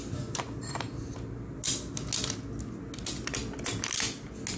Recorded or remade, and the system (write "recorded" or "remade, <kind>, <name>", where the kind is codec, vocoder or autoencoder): recorded